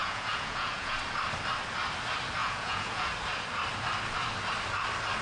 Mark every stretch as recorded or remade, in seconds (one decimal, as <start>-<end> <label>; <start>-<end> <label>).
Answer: 0.0-1.0 remade; 1.0-2.4 recorded; 2.4-3.1 remade; 3.1-5.2 recorded